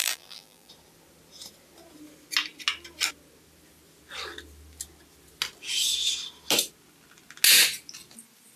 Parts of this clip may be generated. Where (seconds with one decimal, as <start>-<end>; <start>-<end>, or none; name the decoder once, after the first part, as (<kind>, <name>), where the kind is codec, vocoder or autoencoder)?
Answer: 0.0-0.7 (vocoder, BigVGAN v2)